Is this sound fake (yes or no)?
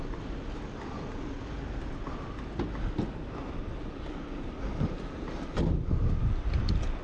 no